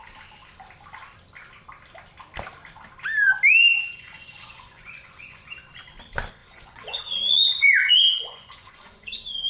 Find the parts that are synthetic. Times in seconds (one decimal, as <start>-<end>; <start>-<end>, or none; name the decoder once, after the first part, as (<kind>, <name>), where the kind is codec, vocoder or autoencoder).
3.6-5.6 (vocoder, Vocos); 6.4-9.5